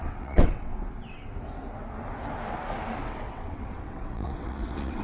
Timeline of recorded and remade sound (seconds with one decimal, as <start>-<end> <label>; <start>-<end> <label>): 0.0-1.3 remade; 1.3-3.0 recorded; 3.0-5.0 remade